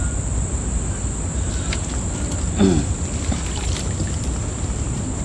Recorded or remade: recorded